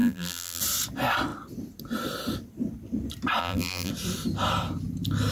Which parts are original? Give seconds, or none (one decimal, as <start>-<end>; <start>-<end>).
0.6-3.4; 3.9-5.3